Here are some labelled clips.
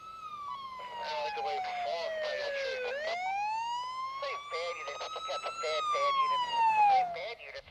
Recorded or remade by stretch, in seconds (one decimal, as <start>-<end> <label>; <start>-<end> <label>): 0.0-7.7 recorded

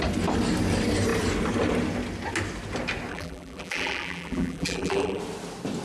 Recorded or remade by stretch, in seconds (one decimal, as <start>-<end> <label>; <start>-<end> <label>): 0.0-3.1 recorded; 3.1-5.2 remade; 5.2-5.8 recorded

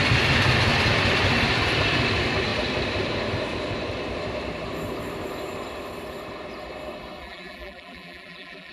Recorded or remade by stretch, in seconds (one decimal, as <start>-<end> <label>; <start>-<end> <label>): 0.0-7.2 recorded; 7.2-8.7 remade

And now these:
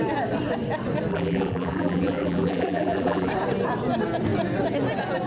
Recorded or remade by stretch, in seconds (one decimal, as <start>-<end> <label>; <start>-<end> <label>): 0.0-1.1 recorded; 1.1-3.3 remade; 3.3-5.3 recorded

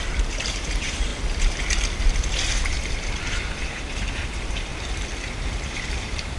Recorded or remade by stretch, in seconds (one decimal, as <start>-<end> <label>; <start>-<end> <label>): 0.0-1.1 remade; 1.1-2.3 recorded; 2.3-4.7 remade; 4.7-5.7 recorded; 5.7-6.4 remade

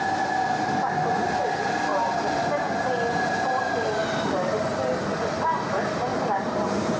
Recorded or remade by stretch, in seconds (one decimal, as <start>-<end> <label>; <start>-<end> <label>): 0.0-1.9 recorded; 1.9-2.5 remade; 2.5-6.1 recorded; 6.1-7.0 remade

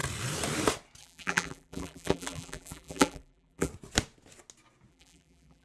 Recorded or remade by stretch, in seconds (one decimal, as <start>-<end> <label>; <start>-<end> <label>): 0.0-1.0 recorded; 1.0-3.7 remade; 3.7-4.9 recorded; 4.9-5.6 remade

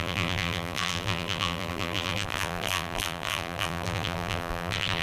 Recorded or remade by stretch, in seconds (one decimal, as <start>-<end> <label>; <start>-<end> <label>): 0.0-5.0 remade